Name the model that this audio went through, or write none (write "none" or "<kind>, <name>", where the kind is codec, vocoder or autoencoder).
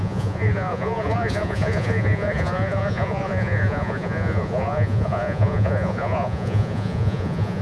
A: vocoder, Vocos